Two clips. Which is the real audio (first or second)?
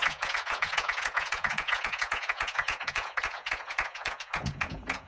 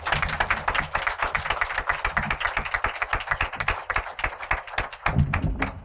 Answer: second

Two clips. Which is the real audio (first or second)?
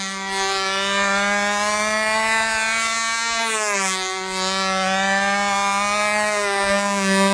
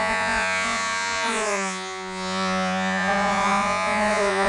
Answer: first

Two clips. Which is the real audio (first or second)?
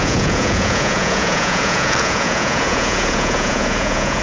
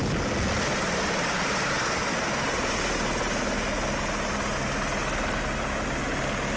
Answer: second